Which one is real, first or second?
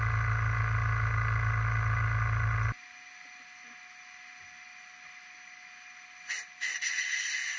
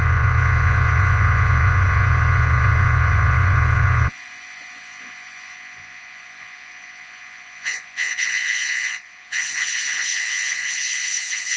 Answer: first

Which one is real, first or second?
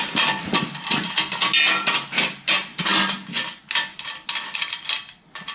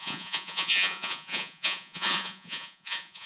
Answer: first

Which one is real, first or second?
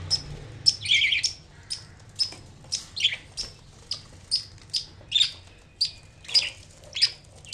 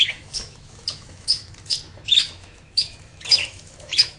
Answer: first